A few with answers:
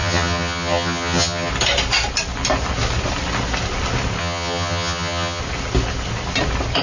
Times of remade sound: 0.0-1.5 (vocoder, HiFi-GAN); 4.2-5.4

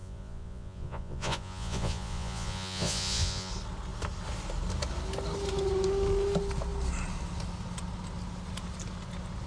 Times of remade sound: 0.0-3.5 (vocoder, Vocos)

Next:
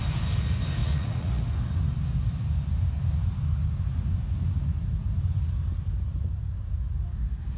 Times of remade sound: 0.8-1.4 (vocoder, Vocos)

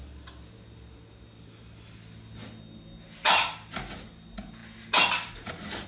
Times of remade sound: none

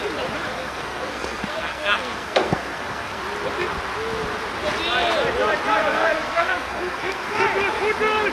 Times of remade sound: 0.5-3.2 (codec, SNAC); 5.8-7.4

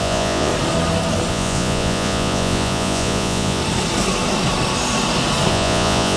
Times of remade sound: 0.0-0.5 (vocoder, Vocos); 1.3-3.6; 5.5-6.2

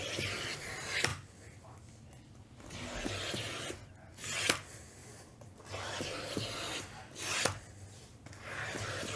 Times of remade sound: none